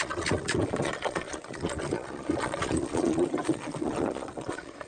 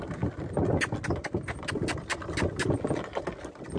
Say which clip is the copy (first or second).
first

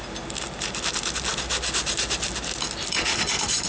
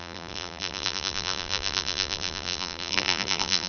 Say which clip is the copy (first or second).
second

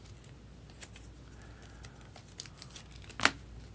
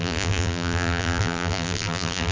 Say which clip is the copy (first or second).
second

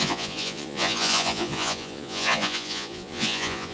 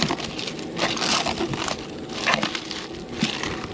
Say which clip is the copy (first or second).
first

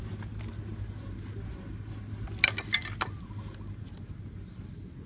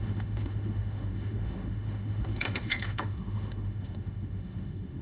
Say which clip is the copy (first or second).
second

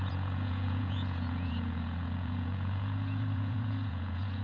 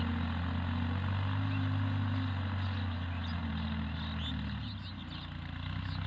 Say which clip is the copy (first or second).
first